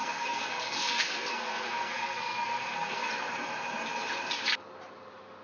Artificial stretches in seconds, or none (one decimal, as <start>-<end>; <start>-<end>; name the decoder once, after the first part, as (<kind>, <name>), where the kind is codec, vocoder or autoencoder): 0.0-3.1 (codec, SNAC)